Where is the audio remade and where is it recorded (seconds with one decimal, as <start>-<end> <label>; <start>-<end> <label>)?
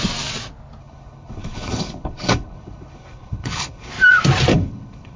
0.0-0.8 recorded; 0.8-3.9 remade; 3.9-4.5 recorded; 4.5-5.2 remade